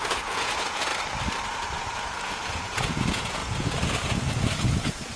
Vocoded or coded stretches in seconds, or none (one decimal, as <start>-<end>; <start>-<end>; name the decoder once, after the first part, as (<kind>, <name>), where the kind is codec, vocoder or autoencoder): 0.0-0.9 (vocoder, Vocos); 1.8-5.2